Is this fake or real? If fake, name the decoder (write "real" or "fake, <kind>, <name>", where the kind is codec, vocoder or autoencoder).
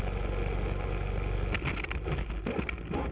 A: real